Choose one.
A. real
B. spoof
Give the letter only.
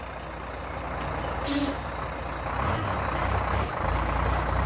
A